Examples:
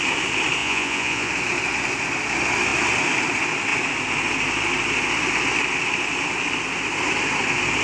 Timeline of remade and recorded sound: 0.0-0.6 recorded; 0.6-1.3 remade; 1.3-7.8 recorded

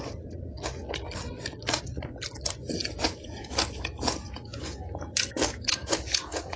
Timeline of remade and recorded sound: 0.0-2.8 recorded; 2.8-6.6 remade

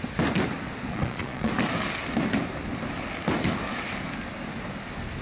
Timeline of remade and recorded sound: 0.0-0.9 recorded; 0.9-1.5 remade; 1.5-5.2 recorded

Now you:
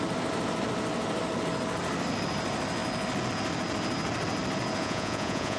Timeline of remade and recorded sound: 0.0-4.8 recorded; 4.8-5.6 remade

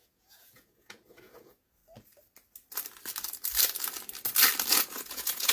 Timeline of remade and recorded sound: 0.0-1.8 remade; 1.8-4.7 recorded; 4.7-5.5 remade